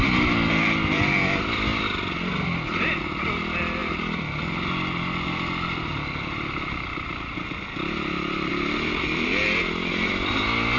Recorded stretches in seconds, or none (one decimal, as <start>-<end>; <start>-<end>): 0.0-10.8

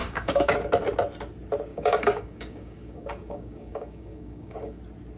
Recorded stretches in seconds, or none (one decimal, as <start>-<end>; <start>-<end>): 0.5-1.7; 4.8-5.2

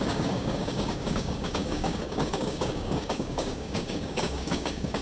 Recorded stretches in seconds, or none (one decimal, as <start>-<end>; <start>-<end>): none